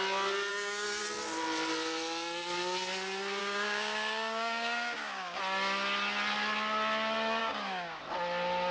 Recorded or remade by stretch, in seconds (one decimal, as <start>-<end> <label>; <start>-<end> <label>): 0.0-0.5 recorded; 0.5-1.0 remade; 1.0-3.4 recorded; 3.4-5.4 remade; 5.4-7.4 recorded; 7.4-8.0 remade; 8.0-8.7 recorded